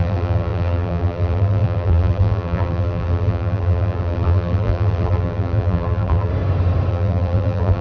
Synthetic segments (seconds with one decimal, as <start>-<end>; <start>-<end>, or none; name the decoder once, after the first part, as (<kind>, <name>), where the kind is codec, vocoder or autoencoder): 0.0-6.3 (vocoder, BigVGAN v2); 6.9-7.8